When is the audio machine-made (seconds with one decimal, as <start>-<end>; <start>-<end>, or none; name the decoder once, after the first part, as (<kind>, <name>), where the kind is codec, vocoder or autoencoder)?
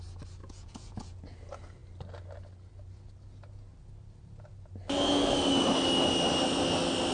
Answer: 0.4-1.2 (vocoder, Vocos)